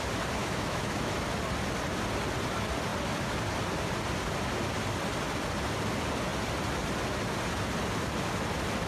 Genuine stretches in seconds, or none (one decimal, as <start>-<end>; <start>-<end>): 0.0-0.4; 1.1-8.9